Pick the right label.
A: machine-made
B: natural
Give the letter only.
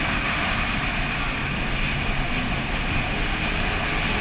B